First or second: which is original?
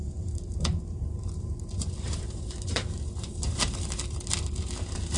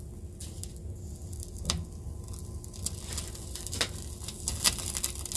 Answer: second